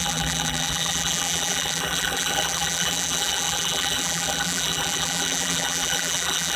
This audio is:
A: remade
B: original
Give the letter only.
A